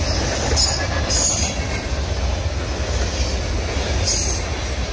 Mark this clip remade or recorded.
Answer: recorded